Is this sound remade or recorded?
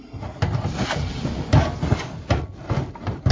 recorded